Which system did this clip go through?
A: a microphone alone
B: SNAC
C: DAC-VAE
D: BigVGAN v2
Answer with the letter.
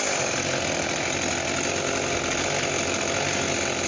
A